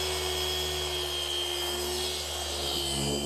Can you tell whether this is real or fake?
real